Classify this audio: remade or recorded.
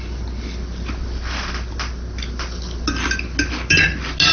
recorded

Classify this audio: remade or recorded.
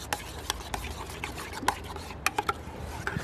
recorded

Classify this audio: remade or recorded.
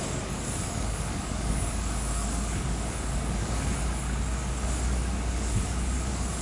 remade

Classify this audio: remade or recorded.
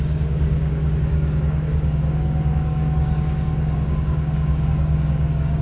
remade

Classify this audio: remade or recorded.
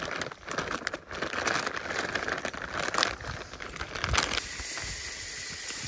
recorded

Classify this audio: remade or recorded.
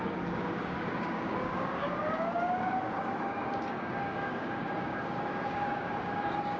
remade